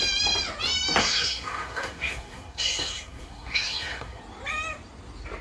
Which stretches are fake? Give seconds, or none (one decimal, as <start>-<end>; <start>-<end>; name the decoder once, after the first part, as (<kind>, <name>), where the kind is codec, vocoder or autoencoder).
1.0-4.2 (codec, SNAC)